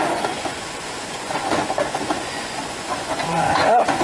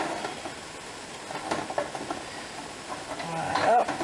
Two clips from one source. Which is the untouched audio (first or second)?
second